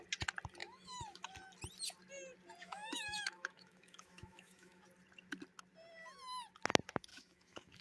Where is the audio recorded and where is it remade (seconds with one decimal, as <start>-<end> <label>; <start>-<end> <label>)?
0.0-0.6 recorded; 0.6-1.3 remade; 1.3-2.6 recorded; 2.6-4.8 remade; 4.8-7.1 recorded; 7.1-7.8 remade